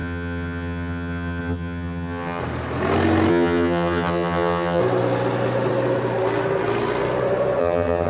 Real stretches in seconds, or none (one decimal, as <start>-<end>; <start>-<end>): 2.4-3.3; 4.8-7.6